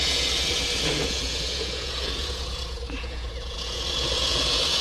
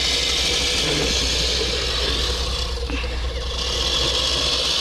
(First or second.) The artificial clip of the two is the first